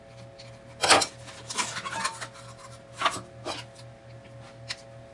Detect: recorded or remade recorded